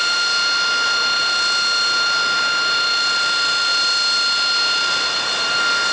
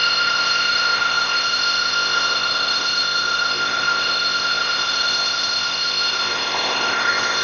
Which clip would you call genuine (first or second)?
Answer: first